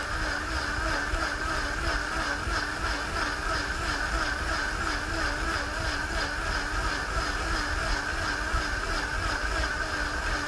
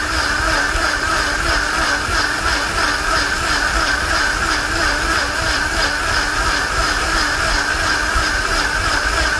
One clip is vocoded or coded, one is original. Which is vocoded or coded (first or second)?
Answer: second